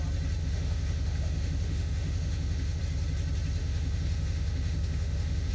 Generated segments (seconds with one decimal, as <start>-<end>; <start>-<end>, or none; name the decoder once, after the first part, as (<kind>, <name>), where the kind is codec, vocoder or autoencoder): 0.4-2.8 (autoencoder, DAC-VAE); 3.6-5.5